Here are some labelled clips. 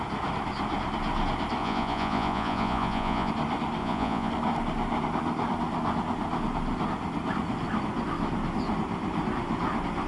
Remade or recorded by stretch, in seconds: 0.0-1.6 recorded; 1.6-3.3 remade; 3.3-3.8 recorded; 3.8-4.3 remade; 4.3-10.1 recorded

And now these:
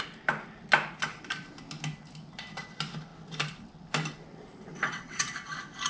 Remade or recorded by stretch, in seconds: 0.0-4.7 recorded; 4.7-5.3 remade; 5.3-5.9 recorded